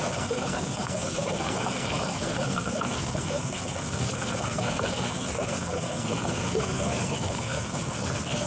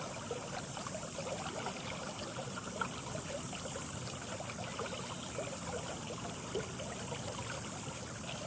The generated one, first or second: first